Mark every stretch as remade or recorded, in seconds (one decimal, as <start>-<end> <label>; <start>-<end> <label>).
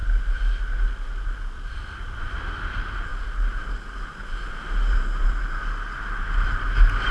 0.0-7.1 recorded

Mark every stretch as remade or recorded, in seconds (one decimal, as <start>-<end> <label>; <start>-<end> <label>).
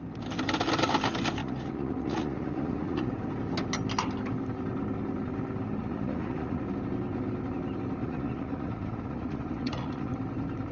0.0-1.4 recorded; 1.4-3.1 remade; 3.1-5.8 recorded; 5.8-6.6 remade; 6.6-8.0 recorded; 8.0-10.1 remade; 10.1-10.7 recorded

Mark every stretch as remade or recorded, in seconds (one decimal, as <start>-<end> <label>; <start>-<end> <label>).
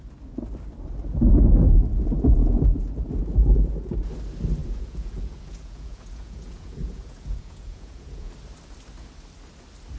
0.0-4.6 recorded; 4.6-8.3 remade; 8.3-10.0 recorded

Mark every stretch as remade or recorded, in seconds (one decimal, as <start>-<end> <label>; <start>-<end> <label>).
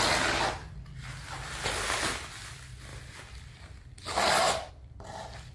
0.0-5.5 recorded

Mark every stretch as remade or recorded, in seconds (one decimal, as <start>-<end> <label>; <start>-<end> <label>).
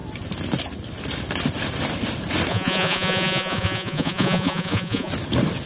0.0-2.5 recorded; 2.5-5.1 remade; 5.1-5.7 recorded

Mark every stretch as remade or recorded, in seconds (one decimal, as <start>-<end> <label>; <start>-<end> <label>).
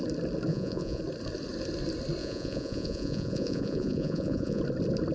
0.0-0.5 recorded; 0.5-1.0 remade; 1.0-2.2 recorded; 2.2-4.6 remade; 4.6-5.1 recorded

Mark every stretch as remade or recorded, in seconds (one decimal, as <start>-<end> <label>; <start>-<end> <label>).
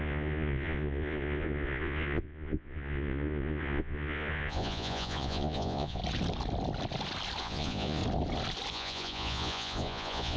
0.0-6.0 remade; 6.0-7.4 recorded; 7.4-8.0 remade; 8.0-8.7 recorded; 8.7-10.4 remade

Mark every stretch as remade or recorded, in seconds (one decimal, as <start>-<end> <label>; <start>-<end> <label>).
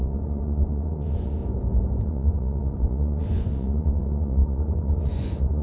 0.0-1.4 remade; 1.4-2.0 recorded; 2.0-5.6 remade